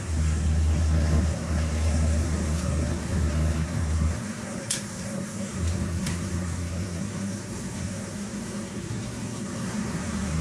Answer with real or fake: fake